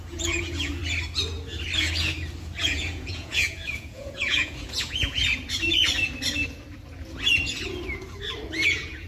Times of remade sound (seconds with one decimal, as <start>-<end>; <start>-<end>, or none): 0.0-0.8; 2.6-5.2; 8.5-9.1